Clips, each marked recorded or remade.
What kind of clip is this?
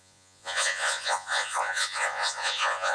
remade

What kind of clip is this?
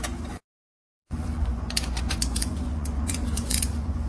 remade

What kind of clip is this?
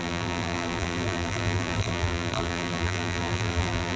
remade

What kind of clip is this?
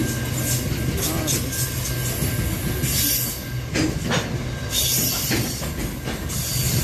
recorded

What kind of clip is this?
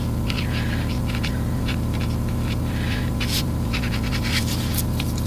remade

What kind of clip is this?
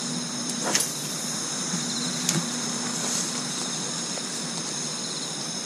remade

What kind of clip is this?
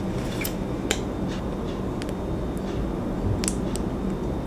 recorded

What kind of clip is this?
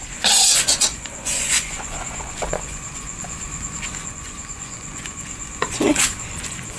remade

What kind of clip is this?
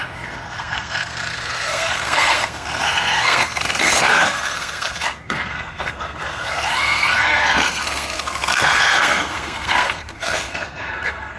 remade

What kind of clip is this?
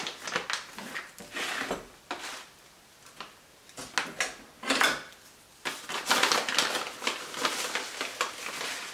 recorded